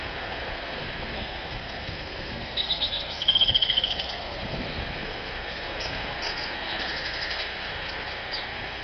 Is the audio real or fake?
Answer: fake